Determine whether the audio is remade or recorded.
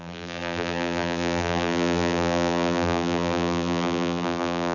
remade